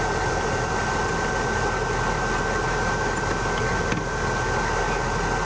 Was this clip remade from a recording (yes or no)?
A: no